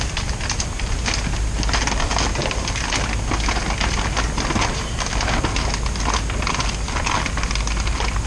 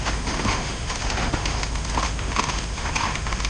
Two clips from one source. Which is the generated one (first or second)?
second